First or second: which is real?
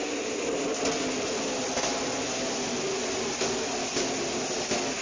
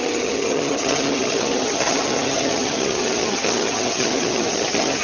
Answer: first